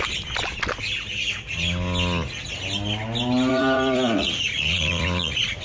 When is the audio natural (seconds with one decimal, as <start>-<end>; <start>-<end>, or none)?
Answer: 0.0-3.5